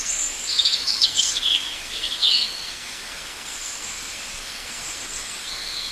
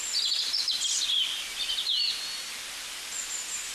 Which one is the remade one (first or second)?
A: first